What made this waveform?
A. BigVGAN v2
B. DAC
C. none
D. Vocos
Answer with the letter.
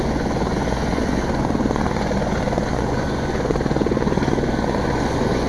D